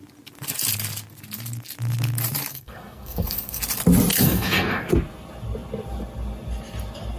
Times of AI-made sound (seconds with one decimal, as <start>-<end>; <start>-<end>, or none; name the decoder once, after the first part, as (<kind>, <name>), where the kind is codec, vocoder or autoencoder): 2.5-3.6 (codec, SNAC); 4.1-4.9

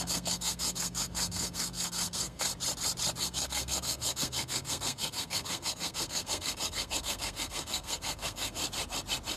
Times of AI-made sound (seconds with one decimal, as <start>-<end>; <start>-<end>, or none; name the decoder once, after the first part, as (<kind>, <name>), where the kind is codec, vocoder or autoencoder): 0.0-2.5 (codec, SNAC); 3.2-8.6

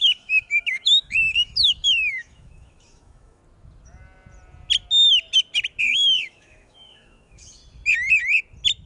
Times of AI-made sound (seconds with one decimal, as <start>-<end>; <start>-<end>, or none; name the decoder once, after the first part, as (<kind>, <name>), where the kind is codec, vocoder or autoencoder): 0.0-3.4 (autoencoder, DAC-VAE); 5.8-7.6

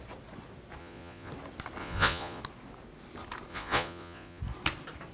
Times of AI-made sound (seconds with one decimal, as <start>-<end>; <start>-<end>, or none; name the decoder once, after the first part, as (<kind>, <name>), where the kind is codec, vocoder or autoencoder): 0.8-1.3 (vocoder, Vocos); 1.8-2.4; 3.5-4.4